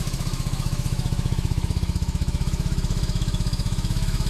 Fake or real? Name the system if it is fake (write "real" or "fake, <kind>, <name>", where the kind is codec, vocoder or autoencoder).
fake, autoencoder, DAC-VAE